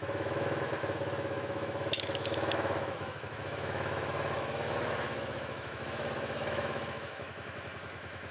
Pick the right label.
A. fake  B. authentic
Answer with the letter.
A